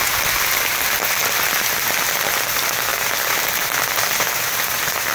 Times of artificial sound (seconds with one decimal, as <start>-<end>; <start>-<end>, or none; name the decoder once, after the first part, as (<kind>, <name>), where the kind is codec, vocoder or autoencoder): 2.9-5.1 (vocoder, BigVGAN v2)